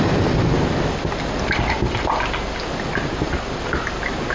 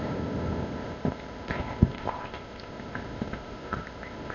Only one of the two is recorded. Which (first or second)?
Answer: first